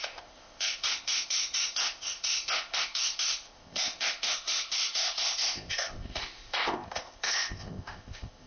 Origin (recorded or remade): remade